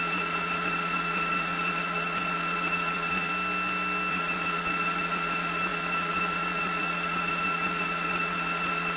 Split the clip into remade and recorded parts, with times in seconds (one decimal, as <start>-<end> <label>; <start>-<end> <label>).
0.0-3.3 remade; 3.3-4.1 recorded; 4.1-9.0 remade